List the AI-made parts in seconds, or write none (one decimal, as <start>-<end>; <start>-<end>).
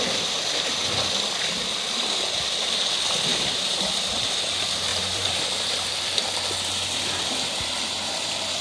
3.3-4.4; 4.9-5.4